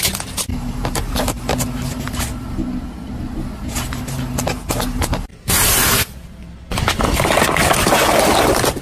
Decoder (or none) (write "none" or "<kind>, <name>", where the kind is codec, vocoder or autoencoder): none